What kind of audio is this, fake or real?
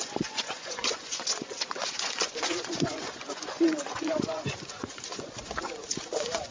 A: fake